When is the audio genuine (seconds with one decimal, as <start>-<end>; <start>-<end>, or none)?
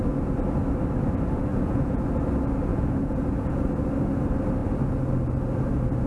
0.0-1.5; 2.1-2.7; 3.7-6.1